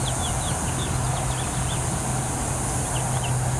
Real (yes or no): yes